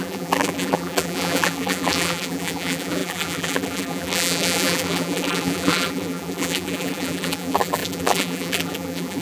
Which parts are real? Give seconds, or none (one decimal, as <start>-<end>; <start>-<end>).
none